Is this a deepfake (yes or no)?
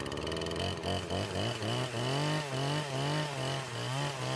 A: no